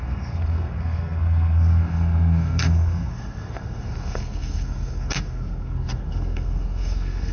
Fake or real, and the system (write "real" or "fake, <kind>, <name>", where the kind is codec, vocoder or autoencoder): fake, codec, SNAC